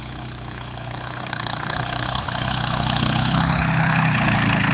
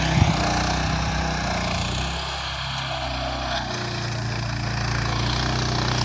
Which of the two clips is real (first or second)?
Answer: second